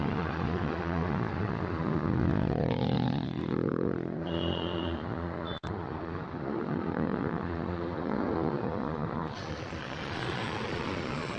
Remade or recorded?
remade